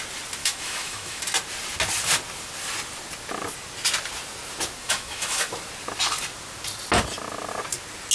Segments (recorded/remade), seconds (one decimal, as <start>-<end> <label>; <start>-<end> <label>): 0.0-0.4 recorded; 0.4-1.2 remade; 1.2-4.8 recorded; 4.8-5.5 remade; 5.5-8.1 recorded